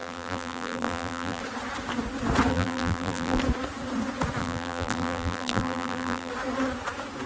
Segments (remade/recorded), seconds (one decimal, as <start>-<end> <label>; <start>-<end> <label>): 0.0-1.4 remade; 1.4-2.5 recorded; 2.5-3.4 remade; 3.4-4.4 recorded; 4.4-6.3 remade; 6.3-7.3 recorded